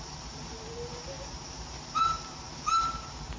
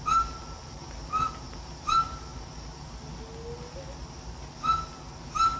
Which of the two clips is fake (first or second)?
first